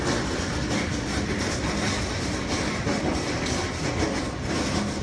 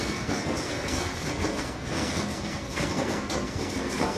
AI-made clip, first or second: second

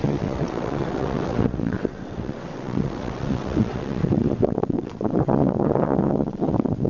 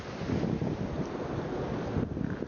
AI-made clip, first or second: first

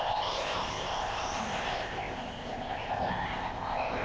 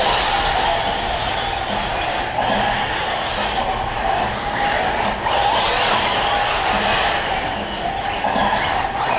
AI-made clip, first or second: first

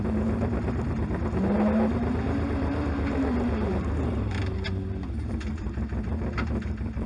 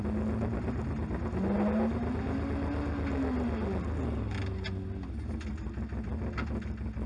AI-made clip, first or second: first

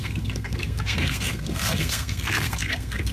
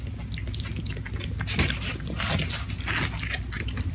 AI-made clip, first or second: first